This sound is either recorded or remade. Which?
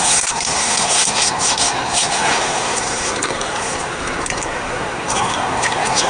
remade